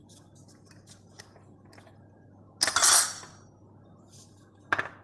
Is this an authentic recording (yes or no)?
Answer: yes